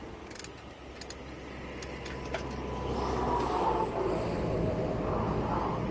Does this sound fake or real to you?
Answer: real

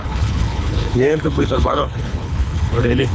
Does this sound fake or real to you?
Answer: fake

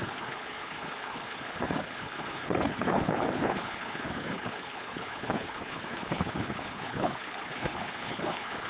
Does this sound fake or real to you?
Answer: fake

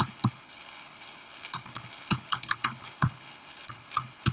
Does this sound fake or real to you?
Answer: fake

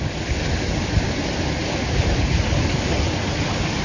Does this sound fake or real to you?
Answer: real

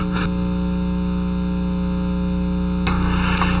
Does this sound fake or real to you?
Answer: real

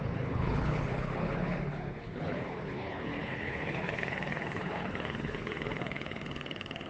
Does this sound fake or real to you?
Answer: fake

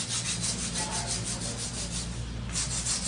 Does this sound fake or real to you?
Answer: real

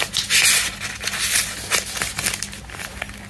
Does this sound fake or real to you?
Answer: real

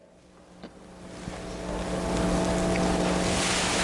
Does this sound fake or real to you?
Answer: real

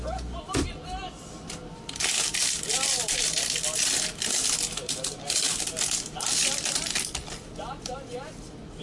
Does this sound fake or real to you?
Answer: real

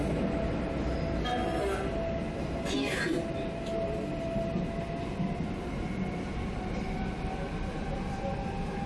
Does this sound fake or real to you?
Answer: real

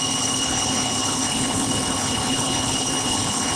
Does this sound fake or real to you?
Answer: fake